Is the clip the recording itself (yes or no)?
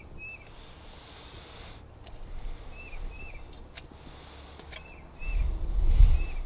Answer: yes